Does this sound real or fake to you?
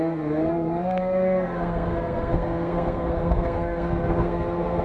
fake